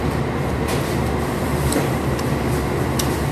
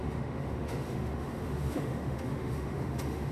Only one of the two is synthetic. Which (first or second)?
second